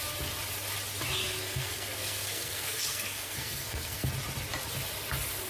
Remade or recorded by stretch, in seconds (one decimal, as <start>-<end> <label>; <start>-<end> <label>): 0.0-1.2 recorded; 1.2-4.1 remade; 4.1-5.5 recorded